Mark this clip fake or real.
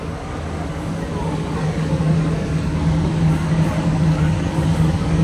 fake